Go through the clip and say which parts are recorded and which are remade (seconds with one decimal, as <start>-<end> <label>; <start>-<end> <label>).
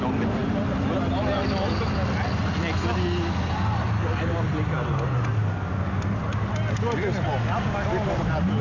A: 0.0-8.6 recorded